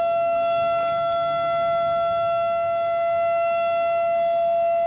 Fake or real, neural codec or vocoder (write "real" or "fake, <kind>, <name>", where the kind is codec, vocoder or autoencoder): real